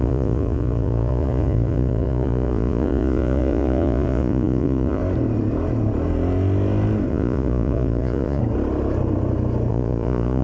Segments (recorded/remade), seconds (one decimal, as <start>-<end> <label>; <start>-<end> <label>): 0.0-5.0 remade; 5.0-7.1 recorded; 7.1-8.4 remade; 8.4-9.7 recorded; 9.7-10.4 remade